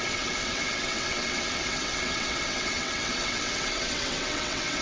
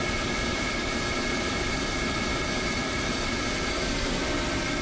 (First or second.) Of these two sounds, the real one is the second